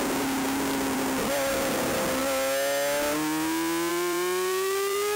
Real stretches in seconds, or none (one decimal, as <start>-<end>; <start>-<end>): 2.2-3.9